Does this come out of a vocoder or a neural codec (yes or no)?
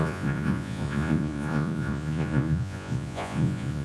yes